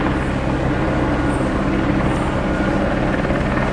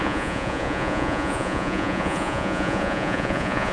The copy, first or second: second